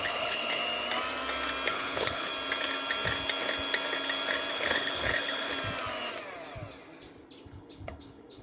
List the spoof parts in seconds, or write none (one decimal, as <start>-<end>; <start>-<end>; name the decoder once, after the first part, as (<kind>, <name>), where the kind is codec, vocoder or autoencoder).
0.0-0.6 (codec, HILCodec); 1.7-2.3; 4.5-5.5; 7.4-8.4